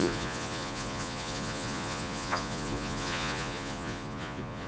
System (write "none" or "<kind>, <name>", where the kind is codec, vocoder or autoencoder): vocoder, Vocos